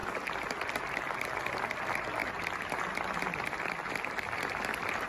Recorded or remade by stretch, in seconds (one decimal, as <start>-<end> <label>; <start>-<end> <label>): 0.0-5.1 recorded